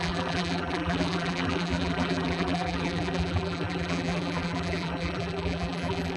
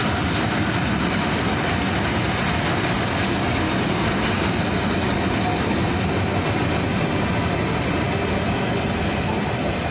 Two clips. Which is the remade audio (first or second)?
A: first